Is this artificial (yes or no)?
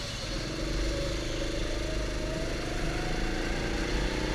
no